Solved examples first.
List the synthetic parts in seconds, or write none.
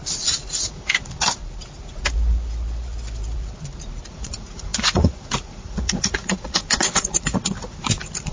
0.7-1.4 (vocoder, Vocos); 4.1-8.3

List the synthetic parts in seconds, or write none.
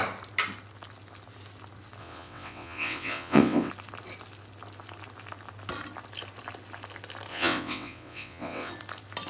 2.0-3.7 (vocoder, WaveNeXt); 7.3-8.7